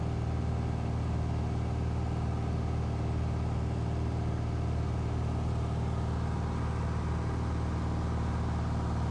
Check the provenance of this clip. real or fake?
real